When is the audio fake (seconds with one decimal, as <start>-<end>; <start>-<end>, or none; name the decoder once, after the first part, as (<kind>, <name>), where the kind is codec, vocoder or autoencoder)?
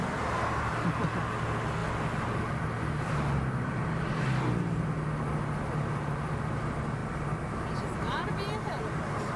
none